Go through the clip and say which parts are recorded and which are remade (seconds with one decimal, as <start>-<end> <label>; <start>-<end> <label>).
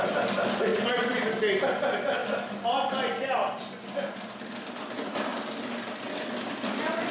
0.0-0.7 recorded; 0.7-1.3 remade; 1.3-2.2 recorded; 2.2-3.6 remade; 3.6-5.3 recorded; 5.3-7.1 remade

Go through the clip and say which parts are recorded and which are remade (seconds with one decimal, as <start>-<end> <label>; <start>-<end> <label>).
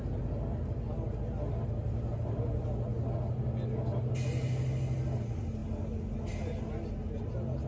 0.0-7.7 recorded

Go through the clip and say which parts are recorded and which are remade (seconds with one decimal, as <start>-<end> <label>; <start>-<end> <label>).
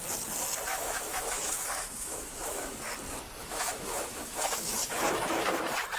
0.0-0.7 recorded; 0.7-2.8 remade; 2.8-3.4 recorded; 3.4-5.6 remade; 5.6-6.0 recorded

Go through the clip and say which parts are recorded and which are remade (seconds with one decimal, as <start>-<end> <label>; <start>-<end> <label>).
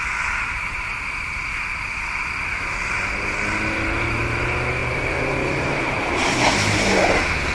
0.0-4.8 recorded; 4.8-6.5 remade; 6.5-7.5 recorded